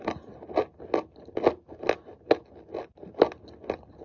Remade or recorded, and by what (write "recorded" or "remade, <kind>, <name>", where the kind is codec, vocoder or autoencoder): recorded